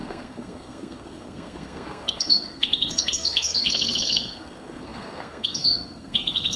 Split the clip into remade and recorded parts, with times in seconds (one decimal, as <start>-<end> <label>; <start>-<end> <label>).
0.0-6.6 remade